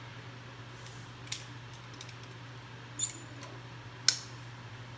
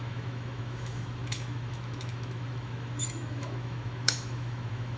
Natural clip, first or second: first